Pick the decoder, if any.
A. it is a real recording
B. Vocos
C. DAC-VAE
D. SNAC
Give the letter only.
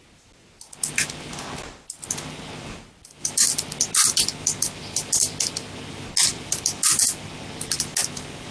A